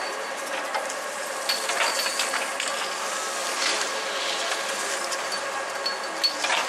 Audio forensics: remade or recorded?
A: recorded